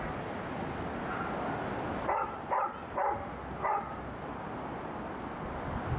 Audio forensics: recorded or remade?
recorded